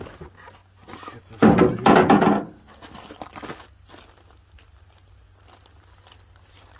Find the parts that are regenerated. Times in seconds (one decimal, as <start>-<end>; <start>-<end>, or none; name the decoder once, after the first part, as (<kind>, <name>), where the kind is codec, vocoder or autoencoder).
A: none